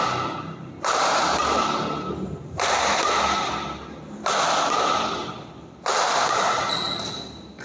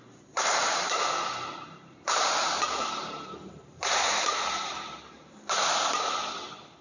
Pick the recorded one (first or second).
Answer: first